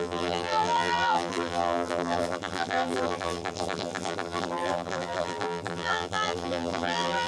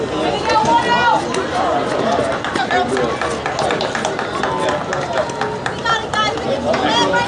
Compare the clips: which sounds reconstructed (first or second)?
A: first